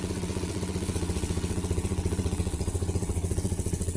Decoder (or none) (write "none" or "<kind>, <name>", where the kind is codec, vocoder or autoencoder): vocoder, WaveNeXt